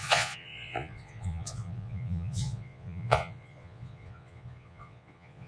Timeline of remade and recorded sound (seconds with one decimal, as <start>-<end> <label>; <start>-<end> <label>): 0.0-5.5 remade